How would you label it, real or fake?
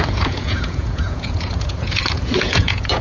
fake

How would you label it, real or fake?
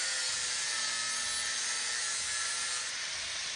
real